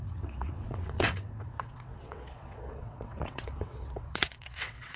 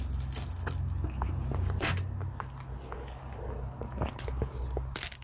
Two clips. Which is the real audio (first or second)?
second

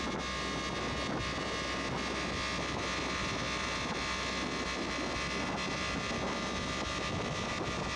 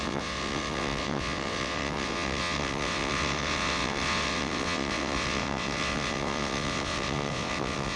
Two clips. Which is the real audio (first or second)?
first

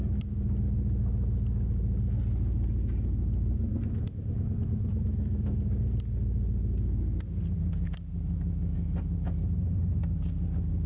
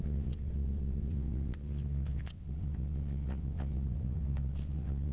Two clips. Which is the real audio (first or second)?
first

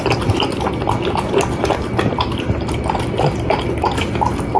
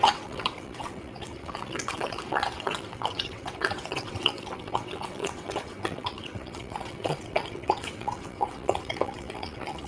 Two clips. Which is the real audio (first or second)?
first